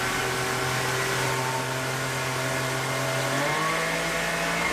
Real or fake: real